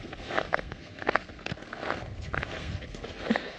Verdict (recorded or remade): remade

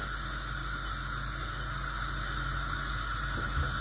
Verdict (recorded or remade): recorded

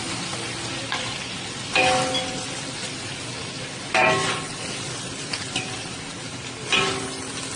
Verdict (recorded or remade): recorded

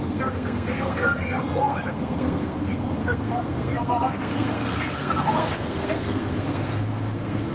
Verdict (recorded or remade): remade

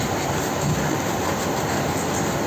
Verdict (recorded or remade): recorded